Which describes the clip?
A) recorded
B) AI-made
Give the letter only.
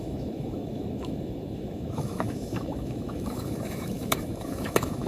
B